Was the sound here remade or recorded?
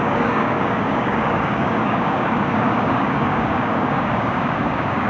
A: remade